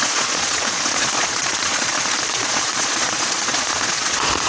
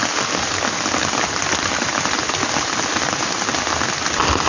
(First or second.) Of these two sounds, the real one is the second